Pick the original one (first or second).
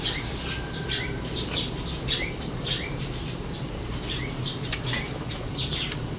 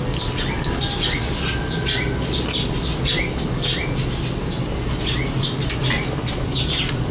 second